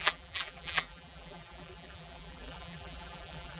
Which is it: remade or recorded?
remade